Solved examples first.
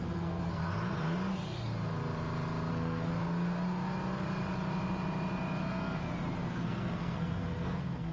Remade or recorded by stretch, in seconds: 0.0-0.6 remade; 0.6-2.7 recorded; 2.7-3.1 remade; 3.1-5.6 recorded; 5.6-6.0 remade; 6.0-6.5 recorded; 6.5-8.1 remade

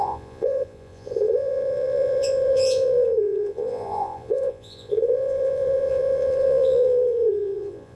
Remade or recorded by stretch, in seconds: 0.0-8.0 remade

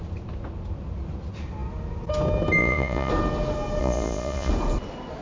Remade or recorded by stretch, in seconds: 0.0-2.6 recorded; 2.6-3.1 remade; 3.1-3.8 recorded; 3.8-4.5 remade; 4.5-5.2 recorded